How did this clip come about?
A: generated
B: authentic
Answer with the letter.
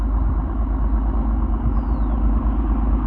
B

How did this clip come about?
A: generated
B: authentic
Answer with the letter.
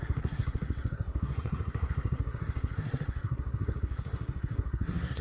A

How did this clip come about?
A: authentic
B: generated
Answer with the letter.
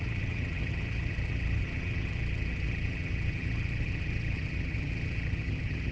B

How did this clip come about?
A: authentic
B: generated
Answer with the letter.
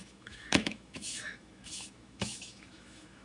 B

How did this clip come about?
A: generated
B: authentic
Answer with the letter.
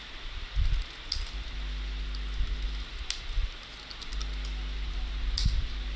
B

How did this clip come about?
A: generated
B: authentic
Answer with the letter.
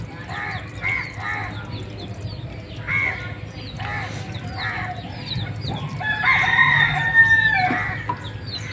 B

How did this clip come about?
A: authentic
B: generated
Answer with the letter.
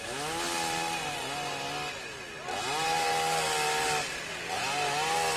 A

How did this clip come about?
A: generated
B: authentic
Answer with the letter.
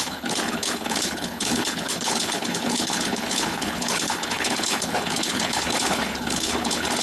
A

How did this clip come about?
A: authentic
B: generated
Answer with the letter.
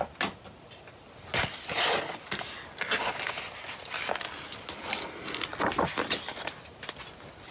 A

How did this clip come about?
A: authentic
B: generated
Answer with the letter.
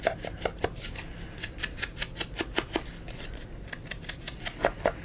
A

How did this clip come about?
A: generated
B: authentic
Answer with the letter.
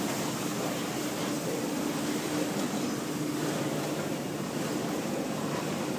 B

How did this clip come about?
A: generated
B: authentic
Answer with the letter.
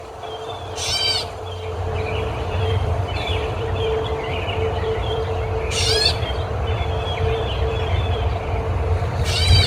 A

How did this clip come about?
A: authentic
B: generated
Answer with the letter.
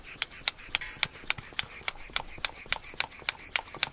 A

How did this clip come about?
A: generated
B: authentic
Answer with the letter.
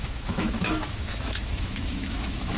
A